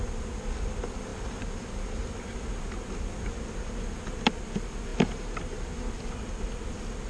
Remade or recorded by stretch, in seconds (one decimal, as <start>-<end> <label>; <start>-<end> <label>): 0.0-7.1 recorded